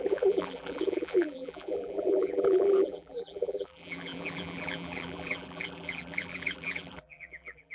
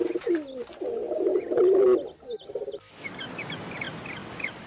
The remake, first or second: first